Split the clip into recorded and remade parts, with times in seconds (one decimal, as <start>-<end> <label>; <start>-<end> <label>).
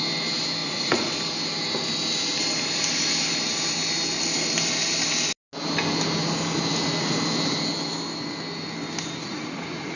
0.0-0.6 recorded; 0.6-1.1 remade; 1.1-9.2 recorded; 9.2-10.0 remade